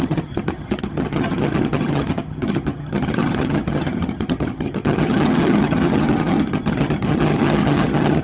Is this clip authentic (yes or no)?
no